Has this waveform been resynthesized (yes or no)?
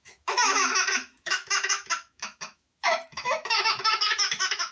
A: yes